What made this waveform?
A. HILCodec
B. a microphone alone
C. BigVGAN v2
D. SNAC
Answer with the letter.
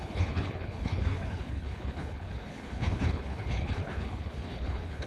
A